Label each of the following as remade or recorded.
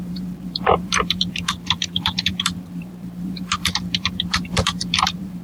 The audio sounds remade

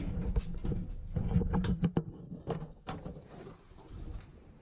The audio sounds remade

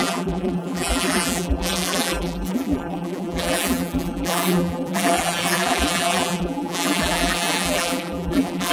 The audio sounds remade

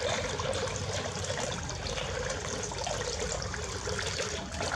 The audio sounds remade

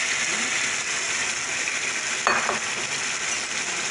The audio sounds recorded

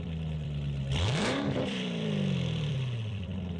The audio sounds remade